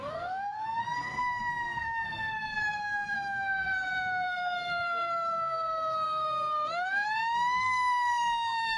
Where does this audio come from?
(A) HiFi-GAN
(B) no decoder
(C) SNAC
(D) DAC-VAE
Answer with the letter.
C